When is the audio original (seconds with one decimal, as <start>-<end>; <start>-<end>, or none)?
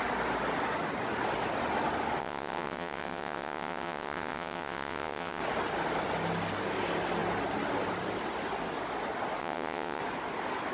0.0-2.2; 5.4-9.4; 10.0-10.7